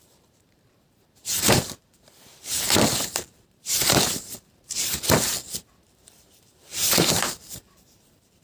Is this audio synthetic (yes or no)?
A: yes